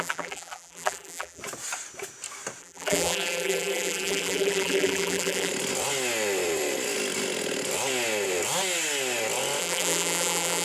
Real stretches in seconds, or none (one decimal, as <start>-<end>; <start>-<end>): 1.4-2.6; 5.5-9.6